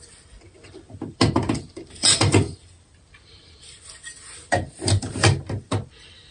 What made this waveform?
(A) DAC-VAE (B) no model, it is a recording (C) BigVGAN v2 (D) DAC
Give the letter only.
C